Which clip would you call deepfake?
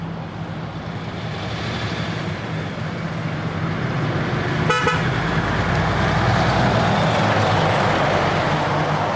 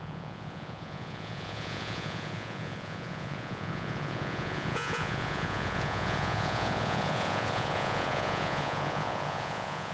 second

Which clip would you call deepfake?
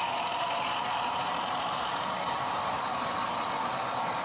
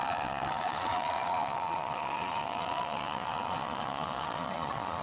second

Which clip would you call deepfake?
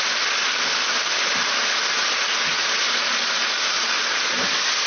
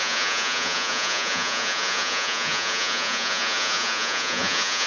second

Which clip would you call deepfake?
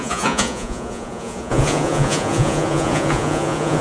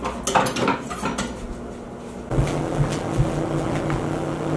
first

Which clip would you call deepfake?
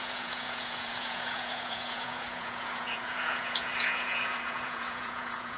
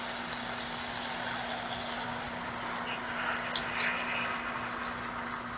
first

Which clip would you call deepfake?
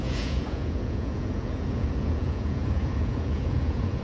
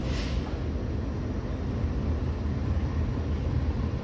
first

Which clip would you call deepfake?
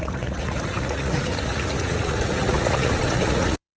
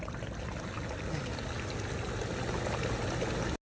first